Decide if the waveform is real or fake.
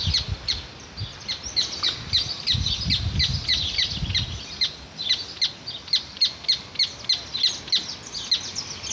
real